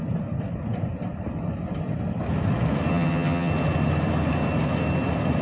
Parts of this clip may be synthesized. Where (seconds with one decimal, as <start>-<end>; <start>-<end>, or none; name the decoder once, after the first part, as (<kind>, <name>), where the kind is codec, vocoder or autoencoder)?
2.9-3.5 (vocoder, HiFi-GAN)